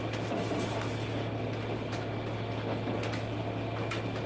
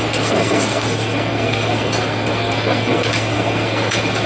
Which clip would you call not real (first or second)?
second